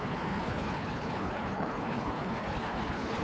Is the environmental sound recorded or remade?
remade